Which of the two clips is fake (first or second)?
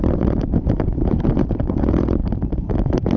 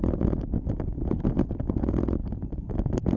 first